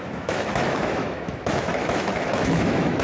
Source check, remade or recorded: remade